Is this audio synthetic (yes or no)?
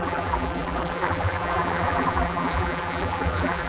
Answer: yes